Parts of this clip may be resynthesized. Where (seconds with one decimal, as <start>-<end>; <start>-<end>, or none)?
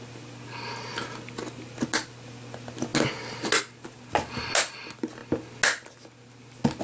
none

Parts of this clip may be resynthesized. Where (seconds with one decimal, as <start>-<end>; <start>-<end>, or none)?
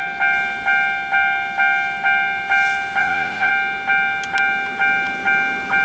3.0-3.5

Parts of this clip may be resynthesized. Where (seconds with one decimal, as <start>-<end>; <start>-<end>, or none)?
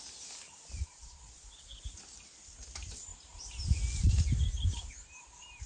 0.8-1.8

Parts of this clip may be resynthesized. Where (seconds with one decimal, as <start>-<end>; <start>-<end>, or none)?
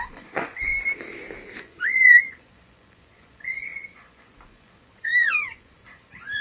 0.0-0.7; 1.6-6.4